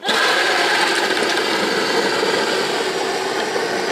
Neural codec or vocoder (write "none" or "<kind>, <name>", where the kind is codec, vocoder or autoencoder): none